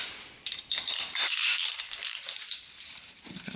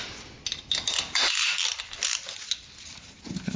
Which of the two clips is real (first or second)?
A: second